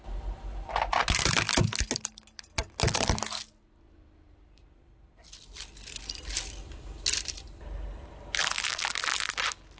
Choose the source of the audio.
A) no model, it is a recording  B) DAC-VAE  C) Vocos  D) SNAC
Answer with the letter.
A